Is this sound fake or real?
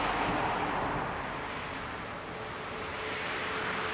real